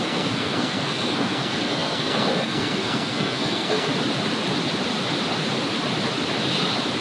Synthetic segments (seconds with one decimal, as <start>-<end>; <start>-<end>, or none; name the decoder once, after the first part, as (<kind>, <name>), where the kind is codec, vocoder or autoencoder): 0.0-3.9 (codec, SNAC)